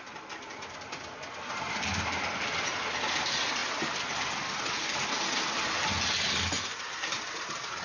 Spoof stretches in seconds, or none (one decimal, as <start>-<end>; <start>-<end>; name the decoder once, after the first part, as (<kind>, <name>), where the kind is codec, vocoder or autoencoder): none